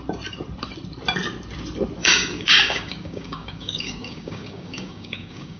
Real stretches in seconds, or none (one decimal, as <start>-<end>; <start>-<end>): 0.0-2.0